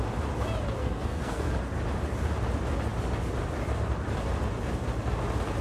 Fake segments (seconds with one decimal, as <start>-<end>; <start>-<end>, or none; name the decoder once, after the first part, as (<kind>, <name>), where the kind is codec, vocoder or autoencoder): 0.8-1.5 (codec, SNAC)